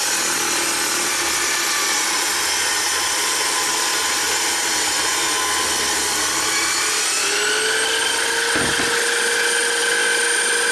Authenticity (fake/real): real